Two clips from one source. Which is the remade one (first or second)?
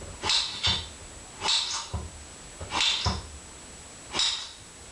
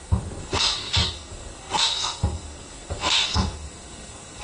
second